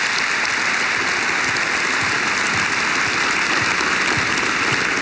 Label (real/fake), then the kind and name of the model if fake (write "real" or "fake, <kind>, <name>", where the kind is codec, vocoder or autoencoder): real